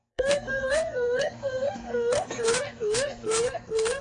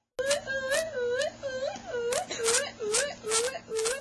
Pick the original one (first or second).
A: second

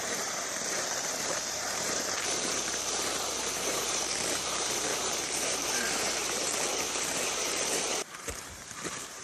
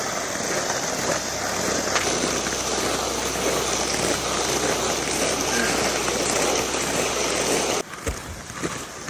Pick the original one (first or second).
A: second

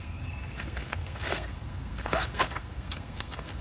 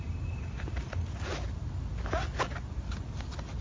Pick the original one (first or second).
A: second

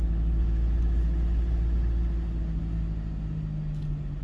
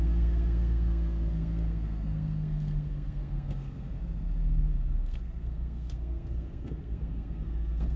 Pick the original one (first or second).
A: first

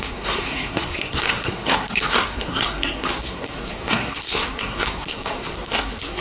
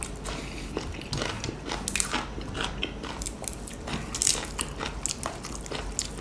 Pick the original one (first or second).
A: second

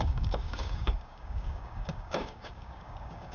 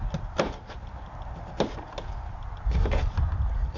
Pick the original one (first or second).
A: second